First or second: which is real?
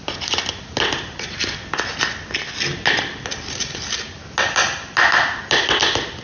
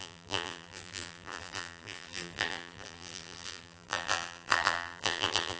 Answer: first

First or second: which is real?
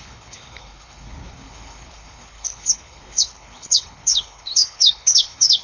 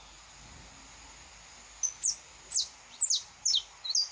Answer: second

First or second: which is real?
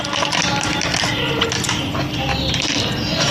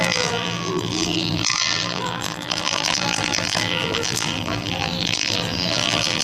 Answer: first